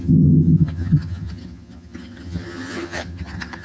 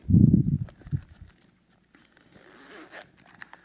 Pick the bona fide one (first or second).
second